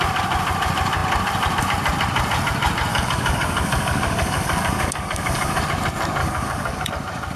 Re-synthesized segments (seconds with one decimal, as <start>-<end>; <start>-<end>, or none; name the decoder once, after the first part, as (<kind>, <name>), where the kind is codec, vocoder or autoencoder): 2.9-5.6 (codec, DAC); 6.2-6.9